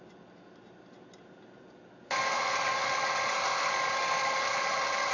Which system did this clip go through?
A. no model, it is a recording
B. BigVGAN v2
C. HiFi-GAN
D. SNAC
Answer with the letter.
A